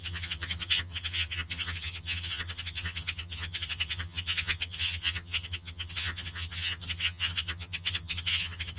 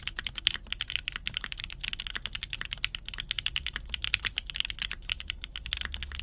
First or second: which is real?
second